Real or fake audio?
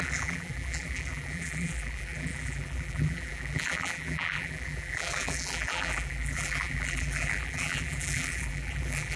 fake